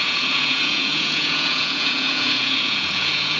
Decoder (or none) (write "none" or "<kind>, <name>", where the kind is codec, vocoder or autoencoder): vocoder, Vocos